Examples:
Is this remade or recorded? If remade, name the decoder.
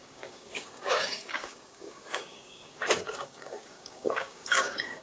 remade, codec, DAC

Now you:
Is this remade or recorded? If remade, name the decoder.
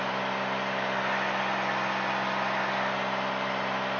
recorded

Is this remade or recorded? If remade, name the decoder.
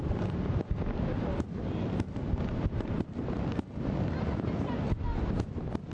recorded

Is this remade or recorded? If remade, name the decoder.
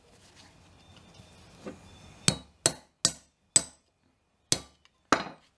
recorded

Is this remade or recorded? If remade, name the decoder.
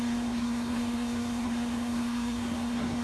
remade, codec, SNAC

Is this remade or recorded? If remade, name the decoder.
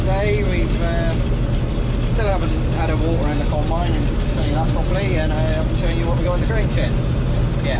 recorded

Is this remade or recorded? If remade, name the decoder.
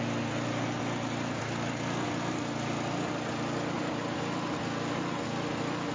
recorded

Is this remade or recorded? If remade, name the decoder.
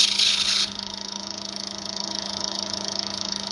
remade, codec, HILCodec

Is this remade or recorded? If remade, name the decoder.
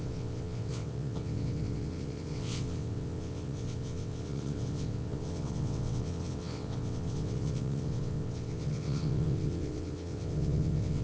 remade, vocoder, WaveNeXt